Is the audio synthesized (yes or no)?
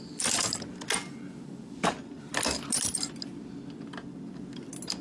no